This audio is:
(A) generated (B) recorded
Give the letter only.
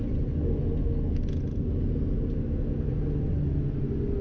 B